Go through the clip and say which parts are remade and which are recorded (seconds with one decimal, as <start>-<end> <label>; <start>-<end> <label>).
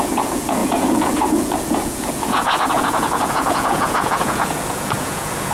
0.0-5.5 remade